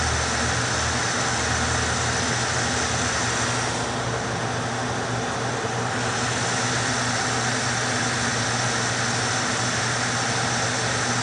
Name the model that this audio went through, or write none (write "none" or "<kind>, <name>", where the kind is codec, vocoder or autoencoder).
none